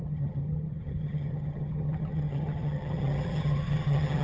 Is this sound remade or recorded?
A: remade